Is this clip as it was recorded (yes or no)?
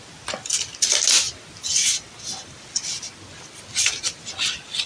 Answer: yes